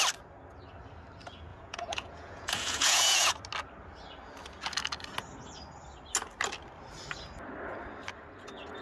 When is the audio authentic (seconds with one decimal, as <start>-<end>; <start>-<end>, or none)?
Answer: 0.0-1.5; 3.3-8.8